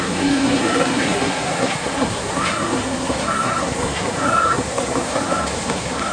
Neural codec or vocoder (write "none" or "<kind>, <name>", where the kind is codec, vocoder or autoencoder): codec, SNAC